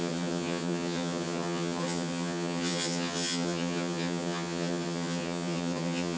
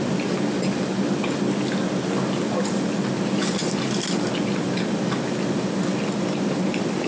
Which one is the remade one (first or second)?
first